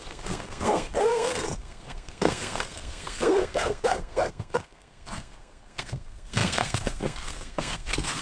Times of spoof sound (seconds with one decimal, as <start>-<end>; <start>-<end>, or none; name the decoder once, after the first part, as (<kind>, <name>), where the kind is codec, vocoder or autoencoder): 0.0-8.2 (codec, SNAC)